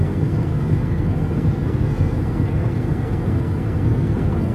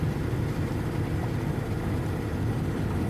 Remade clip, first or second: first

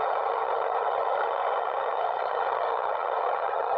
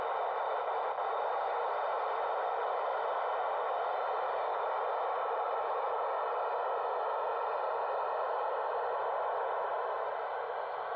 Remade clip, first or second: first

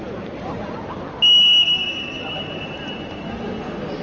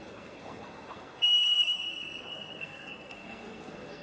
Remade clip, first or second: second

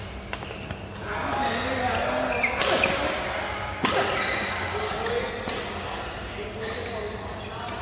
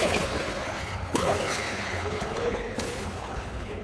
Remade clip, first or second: second